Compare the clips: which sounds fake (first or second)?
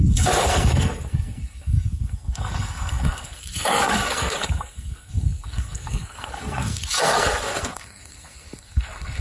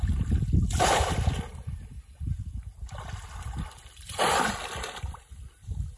first